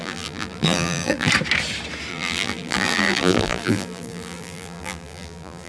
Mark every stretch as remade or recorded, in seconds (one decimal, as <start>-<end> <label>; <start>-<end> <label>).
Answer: 0.0-1.3 remade; 1.3-2.1 recorded; 2.1-5.7 remade